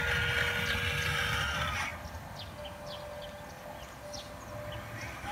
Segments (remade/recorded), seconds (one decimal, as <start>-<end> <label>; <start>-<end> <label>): 0.0-5.3 recorded